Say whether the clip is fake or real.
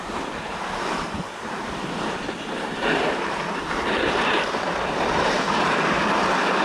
fake